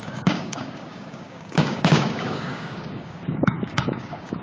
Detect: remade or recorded remade